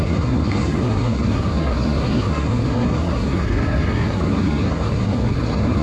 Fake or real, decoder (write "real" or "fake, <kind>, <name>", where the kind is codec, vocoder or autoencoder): fake, codec, SNAC